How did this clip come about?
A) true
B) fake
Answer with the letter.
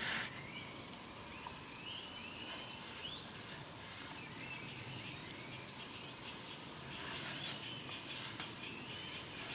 A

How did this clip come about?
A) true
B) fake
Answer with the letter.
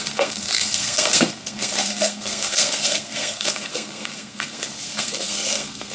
B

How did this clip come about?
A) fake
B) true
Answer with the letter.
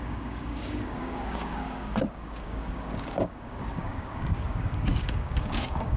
A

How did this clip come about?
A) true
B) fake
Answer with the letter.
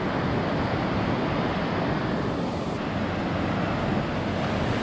A